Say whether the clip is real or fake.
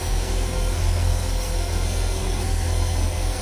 fake